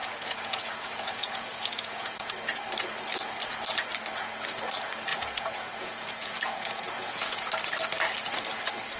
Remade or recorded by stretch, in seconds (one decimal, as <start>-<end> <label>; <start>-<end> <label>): 0.0-2.3 remade; 2.3-5.1 recorded; 5.1-7.5 remade; 7.5-9.0 recorded